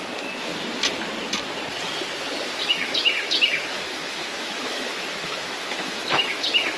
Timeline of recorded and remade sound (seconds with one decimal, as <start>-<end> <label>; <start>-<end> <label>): 0.0-0.5 remade; 0.5-2.6 recorded; 2.6-6.8 remade